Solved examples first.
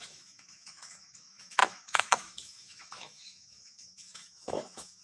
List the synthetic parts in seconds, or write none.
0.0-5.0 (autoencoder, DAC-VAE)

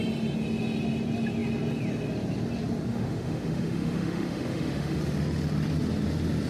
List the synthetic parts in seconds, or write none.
2.9-5.0 (autoencoder, DAC-VAE)

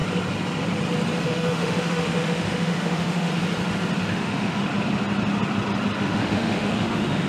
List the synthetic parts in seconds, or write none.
1.2-3.3 (autoencoder, DAC-VAE); 4.0-4.6; 6.0-7.3